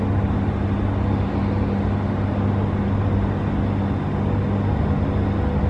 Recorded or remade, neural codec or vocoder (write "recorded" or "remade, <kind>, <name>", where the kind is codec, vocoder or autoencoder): recorded